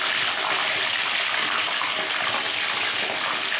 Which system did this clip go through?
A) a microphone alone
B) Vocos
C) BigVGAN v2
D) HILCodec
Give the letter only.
A